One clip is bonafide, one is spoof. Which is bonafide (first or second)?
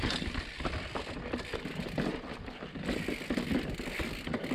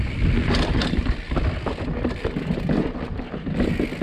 second